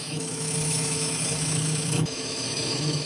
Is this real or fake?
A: fake